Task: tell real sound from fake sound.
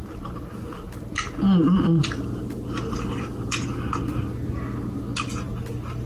real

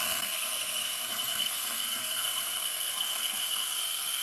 fake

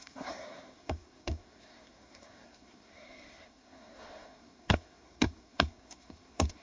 fake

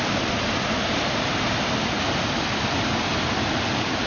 real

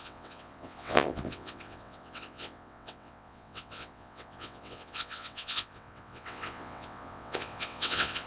fake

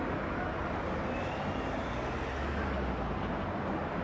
real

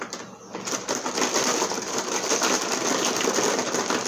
real